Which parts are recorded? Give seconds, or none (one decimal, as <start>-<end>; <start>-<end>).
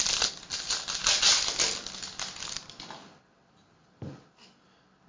0.0-5.1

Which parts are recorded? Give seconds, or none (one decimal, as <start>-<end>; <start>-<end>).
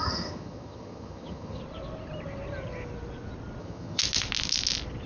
1.6-3.6; 4.0-5.1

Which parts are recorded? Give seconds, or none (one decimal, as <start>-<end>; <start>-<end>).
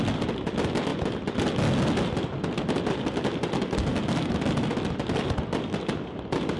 0.0-6.6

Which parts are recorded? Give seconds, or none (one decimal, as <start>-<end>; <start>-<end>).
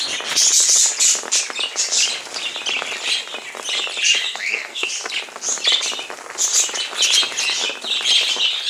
0.0-4.3; 4.9-8.7